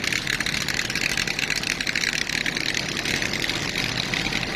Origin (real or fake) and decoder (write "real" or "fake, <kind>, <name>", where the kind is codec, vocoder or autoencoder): real